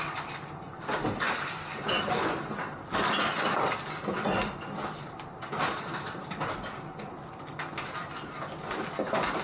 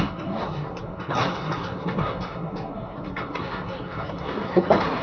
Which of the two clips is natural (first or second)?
first